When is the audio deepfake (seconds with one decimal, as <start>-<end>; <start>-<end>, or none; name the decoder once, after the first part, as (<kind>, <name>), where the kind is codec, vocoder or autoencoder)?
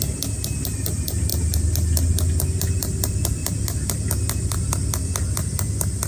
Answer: none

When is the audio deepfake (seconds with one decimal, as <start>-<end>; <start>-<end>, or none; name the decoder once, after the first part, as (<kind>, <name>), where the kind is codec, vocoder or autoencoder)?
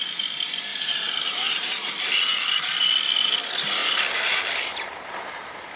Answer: 0.7-1.9 (vocoder, BigVGAN v2); 3.8-5.8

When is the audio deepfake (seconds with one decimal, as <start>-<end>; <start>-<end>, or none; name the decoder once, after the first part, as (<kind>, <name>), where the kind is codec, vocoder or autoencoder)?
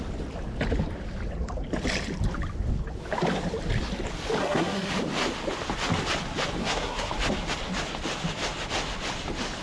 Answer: 4.4-4.9 (codec, SNAC); 6.6-7.1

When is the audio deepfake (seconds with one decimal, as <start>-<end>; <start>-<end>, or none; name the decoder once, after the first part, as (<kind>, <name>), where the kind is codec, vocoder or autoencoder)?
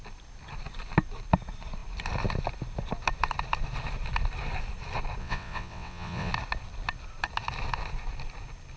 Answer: 5.2-6.3 (vocoder, WaveNeXt)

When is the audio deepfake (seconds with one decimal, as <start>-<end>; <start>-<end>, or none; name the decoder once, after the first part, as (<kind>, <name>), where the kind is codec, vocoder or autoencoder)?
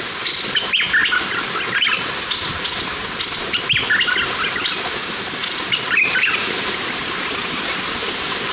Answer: none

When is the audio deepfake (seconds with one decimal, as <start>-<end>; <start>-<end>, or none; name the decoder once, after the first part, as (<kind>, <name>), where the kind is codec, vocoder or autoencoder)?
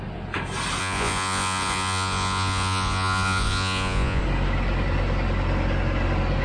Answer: 0.8-4.2 (vocoder, Vocos)